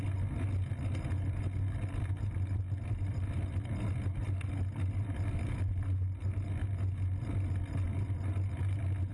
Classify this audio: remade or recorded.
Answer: recorded